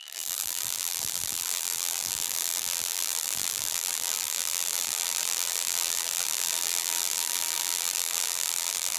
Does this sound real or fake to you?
fake